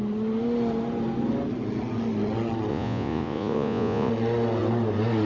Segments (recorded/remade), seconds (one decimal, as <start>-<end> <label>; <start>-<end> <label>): 0.0-2.7 recorded; 2.7-4.1 remade; 4.1-5.3 recorded